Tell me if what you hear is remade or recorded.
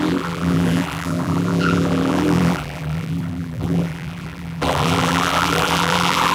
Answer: remade